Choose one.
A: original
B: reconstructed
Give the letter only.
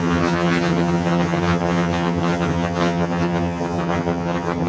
B